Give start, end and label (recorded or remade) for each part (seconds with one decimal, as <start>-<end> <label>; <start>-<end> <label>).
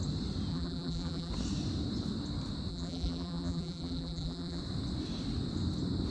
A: 0.0-0.5 recorded; 0.5-1.3 remade; 1.3-2.7 recorded; 2.7-4.6 remade; 4.6-6.1 recorded